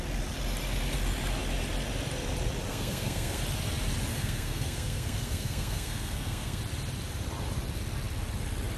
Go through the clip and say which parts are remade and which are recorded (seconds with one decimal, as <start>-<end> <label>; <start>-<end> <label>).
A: 0.0-2.7 recorded; 2.7-3.4 remade; 3.4-4.1 recorded; 4.1-6.6 remade; 6.6-8.8 recorded